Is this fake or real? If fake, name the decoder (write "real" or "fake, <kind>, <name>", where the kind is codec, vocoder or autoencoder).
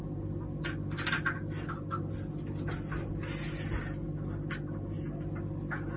real